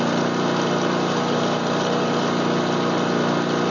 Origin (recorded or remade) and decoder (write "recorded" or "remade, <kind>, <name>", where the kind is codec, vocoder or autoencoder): recorded